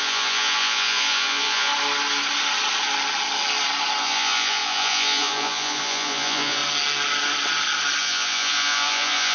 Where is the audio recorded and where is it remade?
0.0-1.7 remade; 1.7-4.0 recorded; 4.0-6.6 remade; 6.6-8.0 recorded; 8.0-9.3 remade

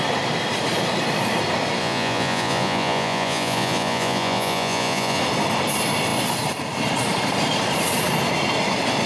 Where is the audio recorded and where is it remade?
0.0-1.8 recorded; 1.8-5.2 remade; 5.2-9.1 recorded